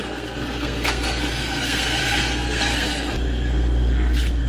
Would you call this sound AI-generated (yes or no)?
yes